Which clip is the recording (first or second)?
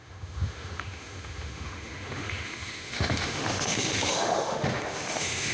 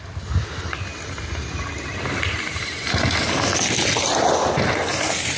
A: second